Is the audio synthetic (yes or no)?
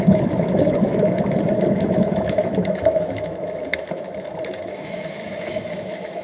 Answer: yes